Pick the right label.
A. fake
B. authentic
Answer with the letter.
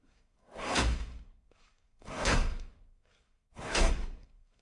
A